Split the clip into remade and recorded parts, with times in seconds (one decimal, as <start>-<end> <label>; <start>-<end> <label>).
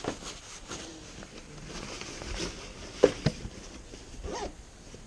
0.0-5.1 recorded